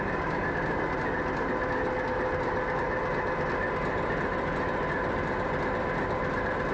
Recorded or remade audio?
recorded